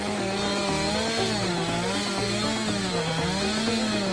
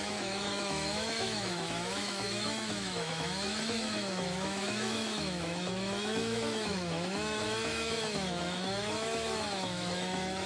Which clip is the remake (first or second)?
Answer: second